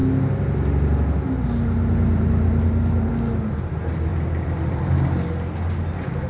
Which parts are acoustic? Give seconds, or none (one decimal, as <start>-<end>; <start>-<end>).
0.0-6.3